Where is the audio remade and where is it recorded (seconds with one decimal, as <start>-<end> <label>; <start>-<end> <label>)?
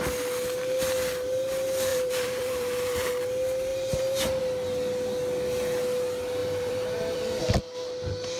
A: 0.0-1.9 recorded; 1.9-3.1 remade; 3.1-3.7 recorded; 3.7-4.4 remade; 4.4-6.4 recorded; 6.4-7.4 remade; 7.4-8.4 recorded